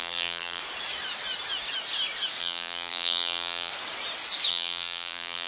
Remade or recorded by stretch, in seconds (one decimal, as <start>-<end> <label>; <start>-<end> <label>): 0.0-0.6 remade; 0.6-2.4 recorded; 2.4-3.7 remade; 3.7-4.5 recorded; 4.5-5.5 remade